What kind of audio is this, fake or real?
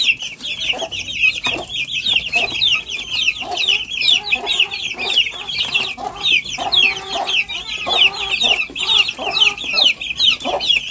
real